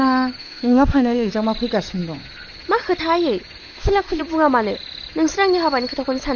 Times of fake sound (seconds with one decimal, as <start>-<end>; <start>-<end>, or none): 0.4-1.3; 3.6-4.2